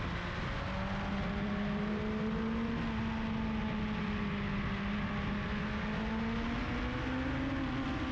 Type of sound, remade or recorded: recorded